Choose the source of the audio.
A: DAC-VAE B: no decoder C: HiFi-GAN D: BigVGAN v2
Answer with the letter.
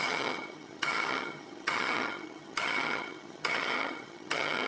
C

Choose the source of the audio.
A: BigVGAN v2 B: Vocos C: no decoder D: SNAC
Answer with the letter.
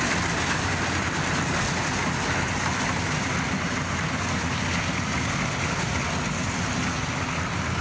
C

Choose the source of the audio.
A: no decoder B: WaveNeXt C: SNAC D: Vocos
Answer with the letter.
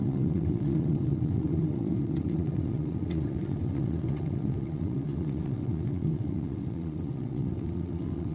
B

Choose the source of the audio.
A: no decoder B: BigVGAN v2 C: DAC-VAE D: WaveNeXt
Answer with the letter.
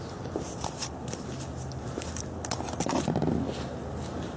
A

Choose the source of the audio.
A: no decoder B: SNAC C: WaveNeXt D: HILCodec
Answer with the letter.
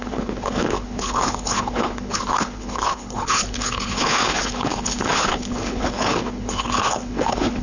D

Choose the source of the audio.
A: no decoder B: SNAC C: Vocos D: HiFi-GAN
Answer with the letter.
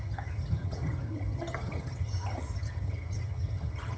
D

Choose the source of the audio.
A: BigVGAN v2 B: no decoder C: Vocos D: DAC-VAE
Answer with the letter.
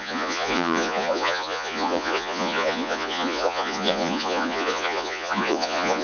C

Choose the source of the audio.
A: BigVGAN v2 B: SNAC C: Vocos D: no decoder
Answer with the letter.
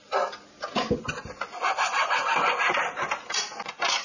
D